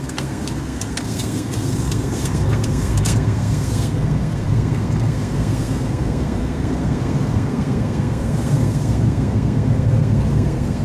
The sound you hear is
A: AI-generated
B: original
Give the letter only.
A